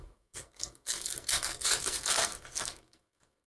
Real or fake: fake